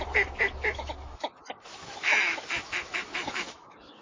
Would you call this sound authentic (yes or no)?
no